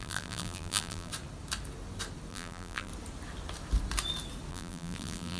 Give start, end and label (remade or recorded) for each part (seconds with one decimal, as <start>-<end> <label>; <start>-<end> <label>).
0.0-1.1 remade; 1.1-2.3 recorded; 2.3-2.9 remade; 2.9-4.5 recorded; 4.5-5.4 remade